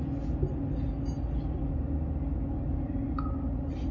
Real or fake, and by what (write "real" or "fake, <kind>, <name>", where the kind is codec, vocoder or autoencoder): real